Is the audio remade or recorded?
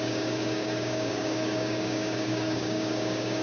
remade